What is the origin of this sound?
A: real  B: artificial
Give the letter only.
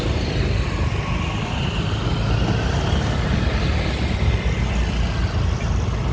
A